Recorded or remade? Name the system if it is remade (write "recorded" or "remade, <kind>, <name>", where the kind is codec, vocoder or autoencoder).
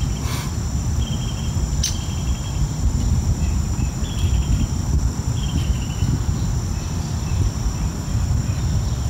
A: recorded